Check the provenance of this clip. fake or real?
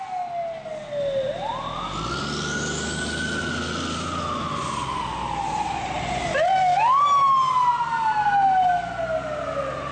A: real